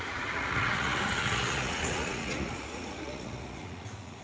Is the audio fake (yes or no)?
yes